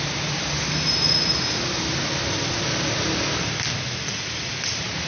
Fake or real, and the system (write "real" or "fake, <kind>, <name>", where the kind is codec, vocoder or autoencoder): real